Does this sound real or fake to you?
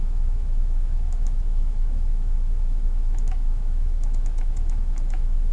fake